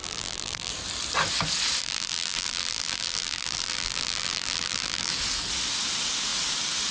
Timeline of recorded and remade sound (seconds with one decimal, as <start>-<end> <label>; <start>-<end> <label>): 0.0-0.7 remade; 0.7-1.8 recorded; 1.8-5.1 remade; 5.1-6.9 recorded